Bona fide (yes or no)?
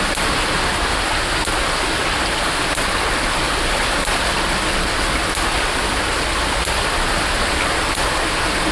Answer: yes